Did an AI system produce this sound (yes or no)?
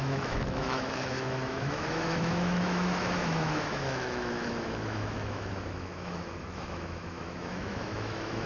yes